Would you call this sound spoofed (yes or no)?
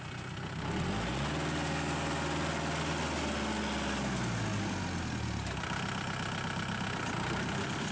no